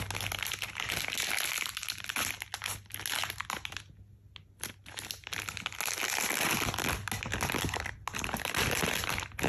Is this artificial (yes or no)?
no